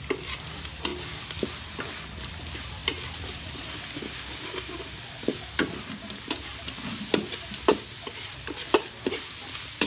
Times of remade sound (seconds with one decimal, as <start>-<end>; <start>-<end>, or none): none